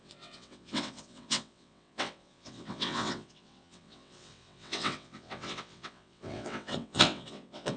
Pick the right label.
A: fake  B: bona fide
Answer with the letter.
A